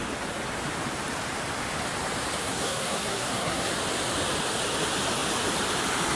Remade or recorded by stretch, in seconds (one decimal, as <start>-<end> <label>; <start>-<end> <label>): 0.0-2.4 recorded; 2.4-3.7 remade; 3.7-6.2 recorded